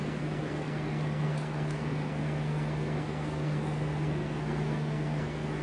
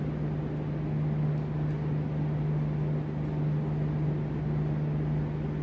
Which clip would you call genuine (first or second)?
second